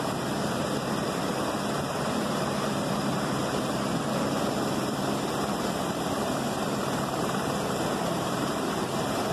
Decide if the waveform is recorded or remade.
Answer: remade